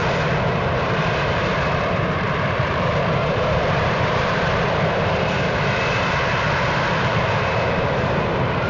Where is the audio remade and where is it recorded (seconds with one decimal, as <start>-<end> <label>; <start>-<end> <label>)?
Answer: 0.0-0.6 recorded; 0.6-8.7 remade